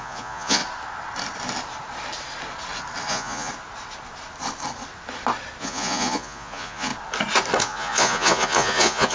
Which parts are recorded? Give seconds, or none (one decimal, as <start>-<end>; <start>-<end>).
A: 0.6-3.1; 3.5-5.6; 6.9-7.6